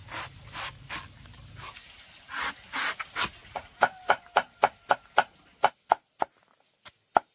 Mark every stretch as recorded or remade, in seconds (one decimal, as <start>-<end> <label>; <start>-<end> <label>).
0.0-7.3 recorded